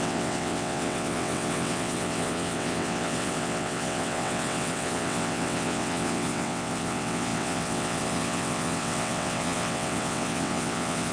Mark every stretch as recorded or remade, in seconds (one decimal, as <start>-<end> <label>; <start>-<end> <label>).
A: 0.0-11.1 remade